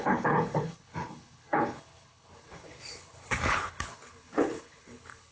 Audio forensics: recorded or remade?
remade